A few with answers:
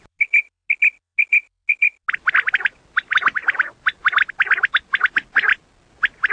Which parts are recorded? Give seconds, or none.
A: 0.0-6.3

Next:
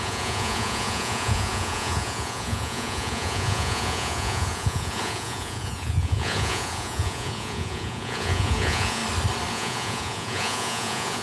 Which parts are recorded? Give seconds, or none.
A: 9.0-9.5

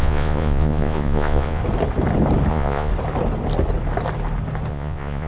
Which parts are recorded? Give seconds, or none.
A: 1.6-2.5; 2.9-4.7

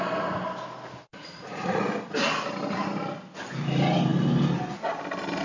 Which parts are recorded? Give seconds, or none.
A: 0.0-1.1; 1.8-5.4

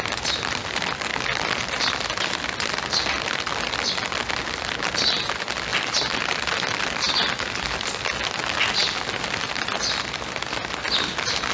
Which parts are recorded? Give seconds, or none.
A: 0.0-11.5

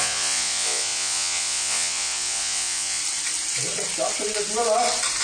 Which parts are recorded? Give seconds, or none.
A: 3.0-5.2

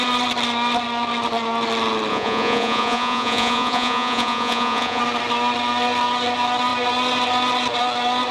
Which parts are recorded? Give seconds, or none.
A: 0.0-2.1; 5.0-8.3